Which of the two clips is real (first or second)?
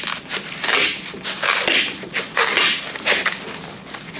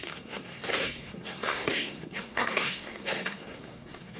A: first